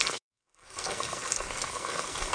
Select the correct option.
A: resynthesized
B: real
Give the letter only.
A